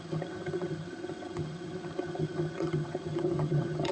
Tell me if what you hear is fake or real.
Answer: fake